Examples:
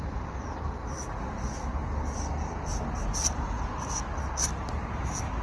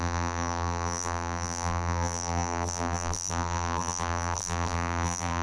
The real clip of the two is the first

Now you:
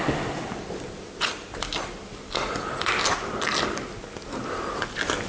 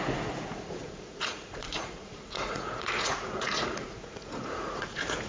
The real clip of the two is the first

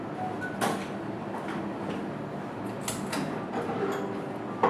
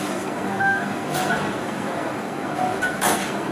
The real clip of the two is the first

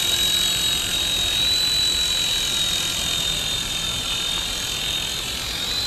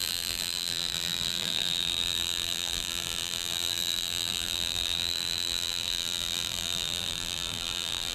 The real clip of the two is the first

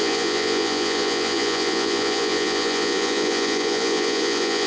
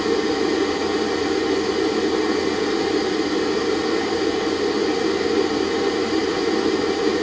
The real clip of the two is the second